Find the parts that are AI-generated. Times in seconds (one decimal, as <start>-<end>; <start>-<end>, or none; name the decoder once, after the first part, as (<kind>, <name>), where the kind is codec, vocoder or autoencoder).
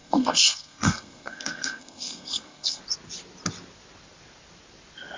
0.0-2.8 (codec, SNAC)